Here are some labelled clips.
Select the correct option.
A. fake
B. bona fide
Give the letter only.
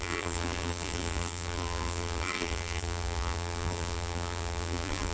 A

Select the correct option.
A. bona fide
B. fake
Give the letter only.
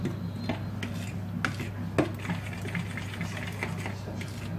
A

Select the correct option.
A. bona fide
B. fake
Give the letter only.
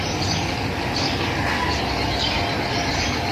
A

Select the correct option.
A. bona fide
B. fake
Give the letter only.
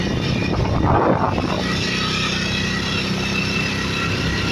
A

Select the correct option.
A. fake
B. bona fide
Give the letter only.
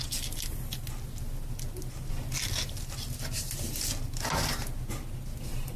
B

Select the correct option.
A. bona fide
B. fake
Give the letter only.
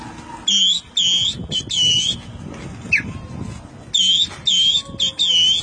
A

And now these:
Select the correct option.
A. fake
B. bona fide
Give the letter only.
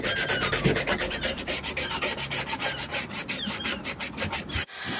A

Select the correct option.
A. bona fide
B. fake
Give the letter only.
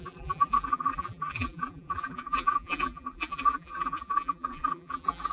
B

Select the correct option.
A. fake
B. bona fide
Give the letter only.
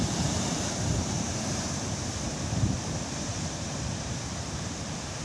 A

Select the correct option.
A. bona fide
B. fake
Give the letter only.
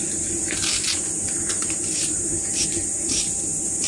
B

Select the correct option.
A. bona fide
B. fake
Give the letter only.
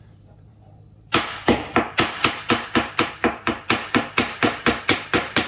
B